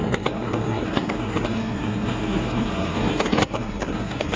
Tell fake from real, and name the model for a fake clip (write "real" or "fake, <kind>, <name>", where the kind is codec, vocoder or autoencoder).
fake, codec, SNAC